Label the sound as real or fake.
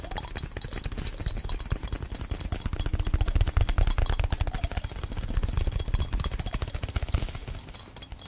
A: real